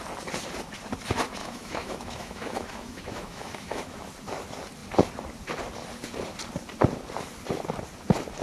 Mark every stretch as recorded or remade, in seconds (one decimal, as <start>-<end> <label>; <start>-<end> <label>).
0.0-1.4 recorded; 1.4-4.1 remade; 4.1-8.4 recorded